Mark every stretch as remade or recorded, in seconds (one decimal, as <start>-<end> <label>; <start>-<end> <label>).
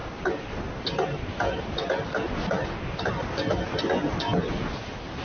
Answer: 0.0-5.2 recorded